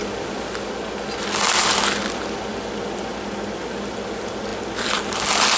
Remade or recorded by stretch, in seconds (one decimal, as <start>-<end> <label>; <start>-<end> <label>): 0.0-5.6 recorded